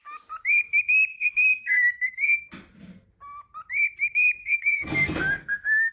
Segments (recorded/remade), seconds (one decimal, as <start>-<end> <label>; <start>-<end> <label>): 0.0-1.1 recorded; 1.1-2.5 remade; 2.5-4.4 recorded; 4.4-5.9 remade